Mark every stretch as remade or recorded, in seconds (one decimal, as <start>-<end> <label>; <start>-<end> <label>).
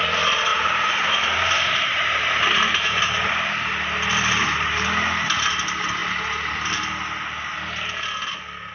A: 0.0-0.5 recorded; 0.5-3.5 remade; 3.5-8.7 recorded